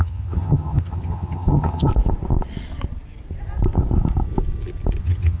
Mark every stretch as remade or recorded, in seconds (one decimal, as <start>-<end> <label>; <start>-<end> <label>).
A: 0.0-1.9 remade; 1.9-5.0 recorded; 5.0-5.4 remade